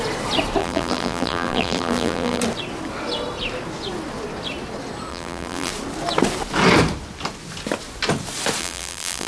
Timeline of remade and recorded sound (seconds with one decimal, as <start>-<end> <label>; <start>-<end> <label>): 0.0-0.6 recorded; 0.6-2.4 remade; 2.4-5.1 recorded; 5.1-5.7 remade; 5.7-8.6 recorded; 8.6-9.3 remade